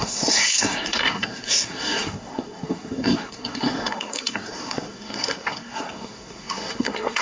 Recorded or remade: remade